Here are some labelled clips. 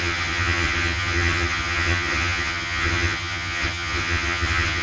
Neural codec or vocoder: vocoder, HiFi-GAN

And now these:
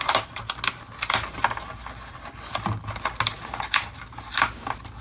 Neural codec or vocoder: none